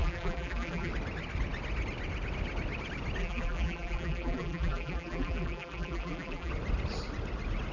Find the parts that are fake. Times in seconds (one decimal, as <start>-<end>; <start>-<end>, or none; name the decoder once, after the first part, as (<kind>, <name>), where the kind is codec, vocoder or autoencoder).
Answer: 0.0-0.9 (vocoder, BigVGAN v2); 3.2-6.5

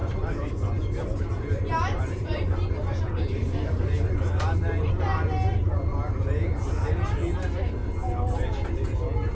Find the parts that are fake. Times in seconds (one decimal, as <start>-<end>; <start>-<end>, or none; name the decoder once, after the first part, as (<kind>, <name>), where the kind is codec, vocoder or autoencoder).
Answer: 0.0-4.9 (vocoder, BigVGAN v2)

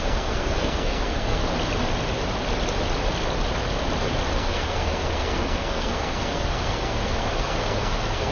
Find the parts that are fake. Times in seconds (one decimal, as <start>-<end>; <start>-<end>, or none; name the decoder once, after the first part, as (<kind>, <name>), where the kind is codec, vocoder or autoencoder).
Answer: 0.0-1.4 (codec, SNAC); 4.3-8.3

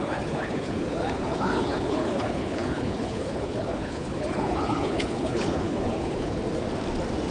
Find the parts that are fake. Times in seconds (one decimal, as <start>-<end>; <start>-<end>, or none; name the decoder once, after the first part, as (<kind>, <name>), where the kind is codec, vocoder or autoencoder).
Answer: 0.0-6.4 (codec, HILCodec)

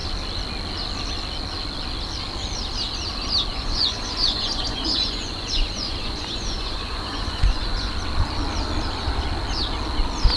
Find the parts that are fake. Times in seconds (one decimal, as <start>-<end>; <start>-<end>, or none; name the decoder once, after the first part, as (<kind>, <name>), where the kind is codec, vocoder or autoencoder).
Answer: 3.5-7.9 (vocoder, Vocos)

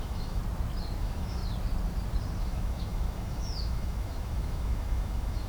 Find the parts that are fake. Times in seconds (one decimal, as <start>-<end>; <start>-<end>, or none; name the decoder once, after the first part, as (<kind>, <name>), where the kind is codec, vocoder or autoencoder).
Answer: 0.0-0.4 (autoencoder, DAC-VAE); 1.0-1.4; 2.4-5.5